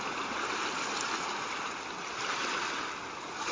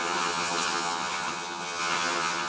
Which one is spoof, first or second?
second